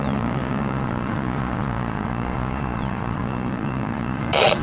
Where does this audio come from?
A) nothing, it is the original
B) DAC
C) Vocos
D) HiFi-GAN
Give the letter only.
C